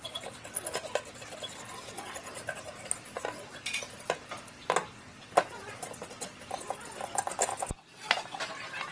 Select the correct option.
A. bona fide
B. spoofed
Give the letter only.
A